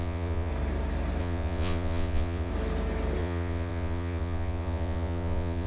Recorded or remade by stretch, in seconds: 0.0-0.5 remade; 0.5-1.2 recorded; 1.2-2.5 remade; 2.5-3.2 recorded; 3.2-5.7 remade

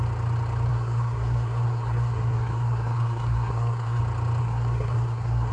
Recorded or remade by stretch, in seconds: 0.0-0.7 recorded; 0.7-4.0 remade; 4.0-4.4 recorded; 4.4-5.5 remade

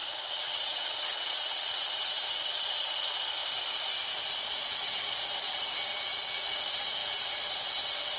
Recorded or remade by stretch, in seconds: 0.0-2.8 remade; 2.8-5.9 recorded; 5.9-6.5 remade; 6.5-8.2 recorded

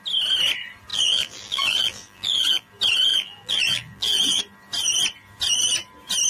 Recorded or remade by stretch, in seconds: 0.0-0.9 recorded; 0.9-2.7 remade; 2.7-3.1 recorded; 3.1-4.4 remade; 4.4-6.3 recorded